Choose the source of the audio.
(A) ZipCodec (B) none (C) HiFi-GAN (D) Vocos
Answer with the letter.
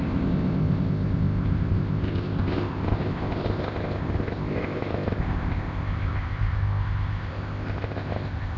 A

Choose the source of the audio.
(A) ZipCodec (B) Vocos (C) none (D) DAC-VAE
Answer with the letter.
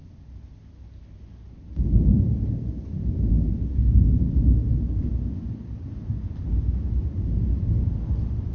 C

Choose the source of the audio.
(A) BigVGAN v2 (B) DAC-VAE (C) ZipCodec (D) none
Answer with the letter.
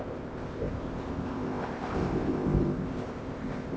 C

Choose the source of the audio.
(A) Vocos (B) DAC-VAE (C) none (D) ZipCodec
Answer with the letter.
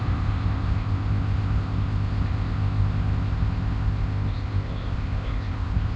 D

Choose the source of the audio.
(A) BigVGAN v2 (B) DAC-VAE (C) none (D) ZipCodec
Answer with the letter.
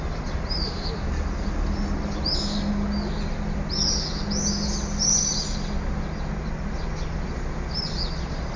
C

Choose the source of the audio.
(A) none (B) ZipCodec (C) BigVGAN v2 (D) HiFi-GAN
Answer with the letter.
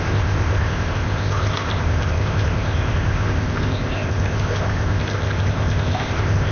B